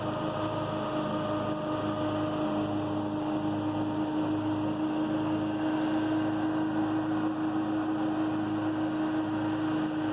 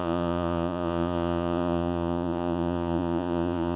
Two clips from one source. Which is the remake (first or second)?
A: second